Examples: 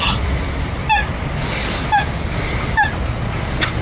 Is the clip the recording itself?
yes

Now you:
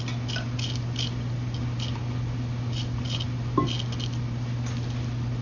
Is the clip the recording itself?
yes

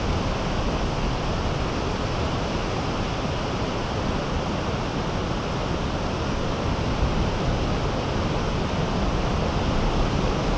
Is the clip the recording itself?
yes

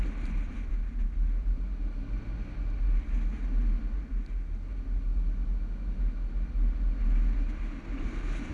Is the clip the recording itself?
yes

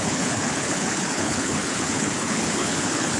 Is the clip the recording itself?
no